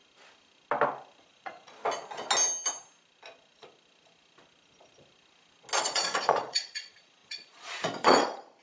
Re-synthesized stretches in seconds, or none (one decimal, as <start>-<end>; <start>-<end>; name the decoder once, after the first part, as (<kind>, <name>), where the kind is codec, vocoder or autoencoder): 1.2-1.8 (vocoder, Vocos); 5.8-8.6